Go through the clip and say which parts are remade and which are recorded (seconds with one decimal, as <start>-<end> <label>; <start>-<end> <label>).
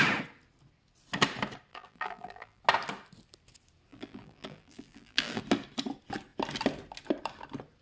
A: 0.0-1.7 recorded; 1.7-2.6 remade; 2.6-3.9 recorded; 3.9-5.4 remade; 5.4-7.8 recorded